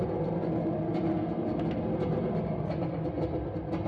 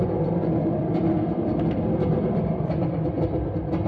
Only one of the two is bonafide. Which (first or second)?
first